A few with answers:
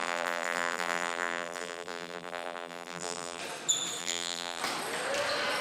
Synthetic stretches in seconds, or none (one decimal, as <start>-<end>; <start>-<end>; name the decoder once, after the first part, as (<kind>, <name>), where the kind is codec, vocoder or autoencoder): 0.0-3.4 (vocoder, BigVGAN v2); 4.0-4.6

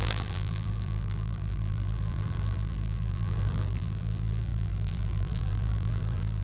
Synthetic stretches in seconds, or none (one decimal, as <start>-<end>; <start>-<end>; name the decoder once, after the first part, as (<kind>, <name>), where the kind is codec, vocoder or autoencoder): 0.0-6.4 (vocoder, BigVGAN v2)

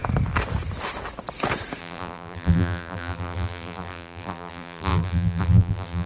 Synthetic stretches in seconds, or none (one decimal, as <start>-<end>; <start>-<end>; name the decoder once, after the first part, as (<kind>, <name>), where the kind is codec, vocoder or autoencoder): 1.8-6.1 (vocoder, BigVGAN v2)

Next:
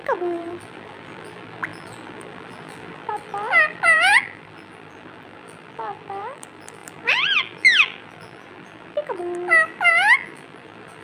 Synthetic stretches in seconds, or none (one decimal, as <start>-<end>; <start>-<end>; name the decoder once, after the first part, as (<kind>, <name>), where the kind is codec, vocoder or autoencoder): 0.0-11.0 (vocoder, BigVGAN v2)

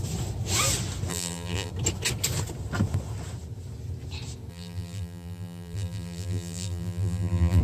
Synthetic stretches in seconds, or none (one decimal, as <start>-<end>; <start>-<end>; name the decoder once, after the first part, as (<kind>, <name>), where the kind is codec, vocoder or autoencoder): 1.1-1.7 (vocoder, BigVGAN v2); 4.5-7.6

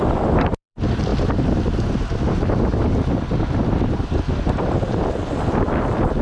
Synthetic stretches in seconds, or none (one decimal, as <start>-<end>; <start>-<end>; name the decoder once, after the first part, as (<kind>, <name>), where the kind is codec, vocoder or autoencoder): 0.0-1.1 (vocoder, BigVGAN v2); 3.1-6.2

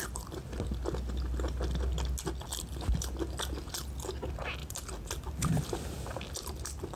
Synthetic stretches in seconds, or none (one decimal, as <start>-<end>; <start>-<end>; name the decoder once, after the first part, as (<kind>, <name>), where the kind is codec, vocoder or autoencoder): 4.6-5.5 (vocoder, BigVGAN v2)

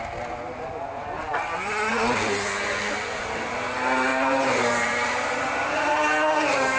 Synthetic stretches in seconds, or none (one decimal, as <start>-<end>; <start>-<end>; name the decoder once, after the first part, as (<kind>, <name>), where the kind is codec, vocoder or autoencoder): 4.1-5.8 (vocoder, BigVGAN v2)